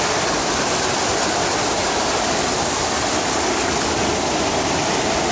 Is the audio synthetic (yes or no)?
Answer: no